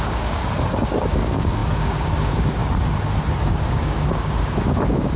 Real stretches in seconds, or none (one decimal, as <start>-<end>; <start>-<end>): 0.4-1.1; 2.6-3.4